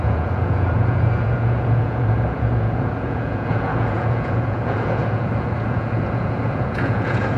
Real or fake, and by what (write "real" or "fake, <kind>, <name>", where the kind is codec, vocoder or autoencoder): fake, vocoder, Vocos